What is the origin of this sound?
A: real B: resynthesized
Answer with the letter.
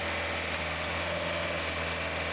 A